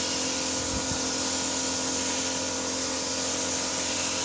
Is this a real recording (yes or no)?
yes